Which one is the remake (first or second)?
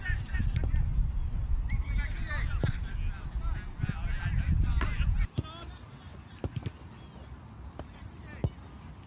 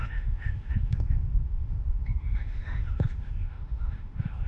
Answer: second